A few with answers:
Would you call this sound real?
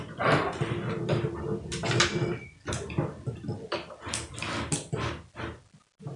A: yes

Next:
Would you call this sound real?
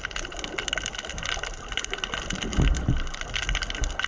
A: yes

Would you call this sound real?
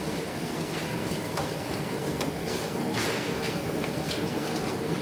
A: no